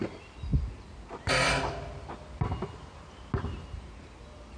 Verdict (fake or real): real